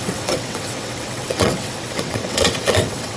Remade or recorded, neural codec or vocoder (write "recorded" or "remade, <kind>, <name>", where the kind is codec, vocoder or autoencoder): remade, vocoder, WaveNeXt